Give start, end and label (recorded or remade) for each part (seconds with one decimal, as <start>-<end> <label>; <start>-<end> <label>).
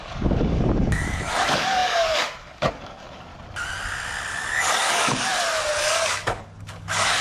0.0-3.3 remade; 3.3-4.3 recorded; 4.3-5.3 remade; 5.3-5.8 recorded; 5.8-7.2 remade